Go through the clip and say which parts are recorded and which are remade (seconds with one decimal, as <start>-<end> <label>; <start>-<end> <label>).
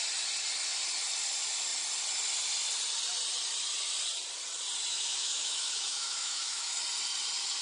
0.0-4.9 recorded; 4.9-6.7 remade; 6.7-7.6 recorded